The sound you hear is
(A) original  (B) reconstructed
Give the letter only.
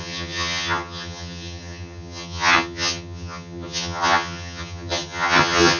B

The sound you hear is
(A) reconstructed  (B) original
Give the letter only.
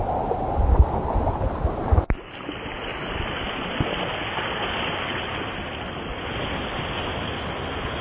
B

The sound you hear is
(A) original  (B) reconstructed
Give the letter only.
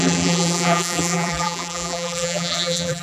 B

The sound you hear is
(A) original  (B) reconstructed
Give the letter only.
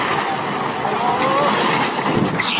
A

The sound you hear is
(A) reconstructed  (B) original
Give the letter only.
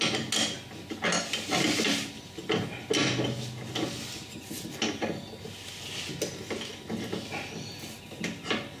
B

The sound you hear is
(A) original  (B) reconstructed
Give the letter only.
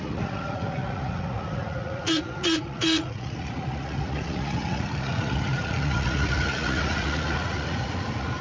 B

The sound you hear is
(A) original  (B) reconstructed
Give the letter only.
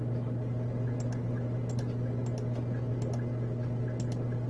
A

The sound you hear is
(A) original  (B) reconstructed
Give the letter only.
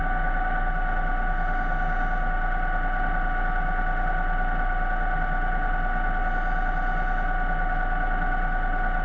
A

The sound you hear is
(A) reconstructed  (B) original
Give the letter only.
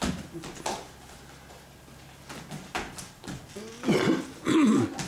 B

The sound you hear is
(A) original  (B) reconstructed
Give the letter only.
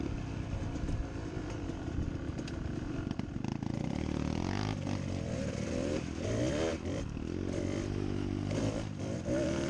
A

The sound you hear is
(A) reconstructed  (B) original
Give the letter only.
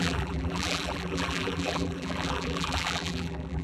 A